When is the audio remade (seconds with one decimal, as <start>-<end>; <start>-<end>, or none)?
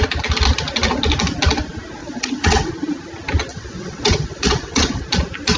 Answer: 2.0-2.7; 3.5-5.0